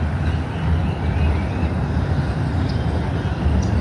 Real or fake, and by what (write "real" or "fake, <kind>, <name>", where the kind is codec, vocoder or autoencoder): real